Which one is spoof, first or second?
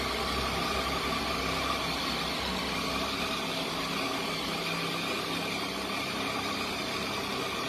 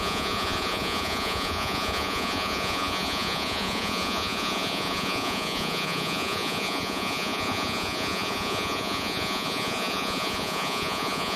second